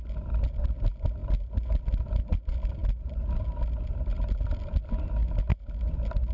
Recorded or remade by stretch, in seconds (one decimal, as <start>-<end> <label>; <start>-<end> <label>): 0.0-6.3 recorded